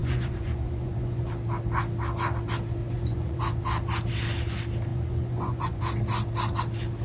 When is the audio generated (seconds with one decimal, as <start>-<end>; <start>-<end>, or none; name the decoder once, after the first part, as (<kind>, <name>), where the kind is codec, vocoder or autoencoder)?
0.0-1.3 (vocoder, Vocos); 2.8-3.4; 4.9-5.8